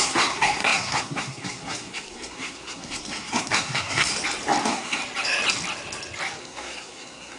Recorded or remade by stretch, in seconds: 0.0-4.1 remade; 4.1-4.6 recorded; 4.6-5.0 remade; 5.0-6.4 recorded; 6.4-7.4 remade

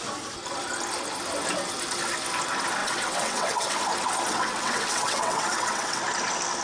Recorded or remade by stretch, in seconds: 0.0-2.8 recorded; 2.8-3.8 remade; 3.8-4.3 recorded; 4.3-6.0 remade; 6.0-6.6 recorded

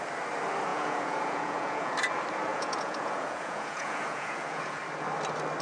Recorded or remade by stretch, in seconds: 0.0-0.7 recorded; 0.7-1.9 remade; 1.9-2.5 recorded; 2.5-4.8 remade; 4.8-5.6 recorded